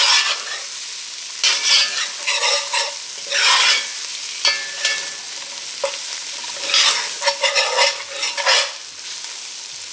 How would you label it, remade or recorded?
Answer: recorded